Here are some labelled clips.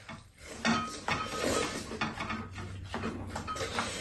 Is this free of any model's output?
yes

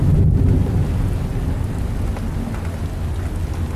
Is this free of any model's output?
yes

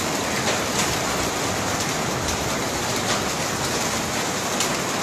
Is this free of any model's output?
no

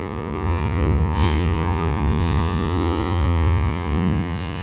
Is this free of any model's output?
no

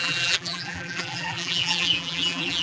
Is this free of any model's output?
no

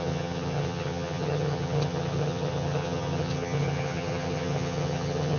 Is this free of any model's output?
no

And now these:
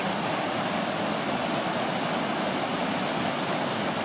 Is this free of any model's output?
yes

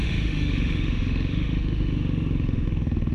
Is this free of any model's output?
no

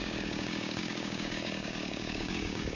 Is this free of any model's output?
no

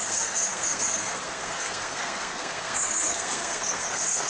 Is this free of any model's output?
no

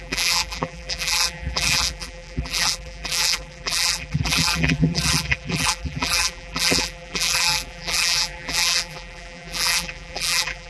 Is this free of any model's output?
no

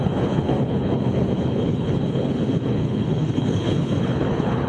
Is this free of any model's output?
no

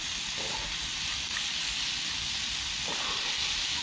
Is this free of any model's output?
yes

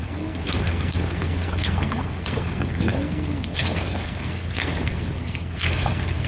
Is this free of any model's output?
no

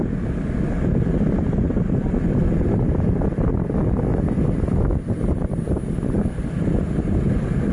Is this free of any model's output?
yes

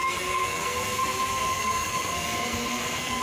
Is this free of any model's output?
no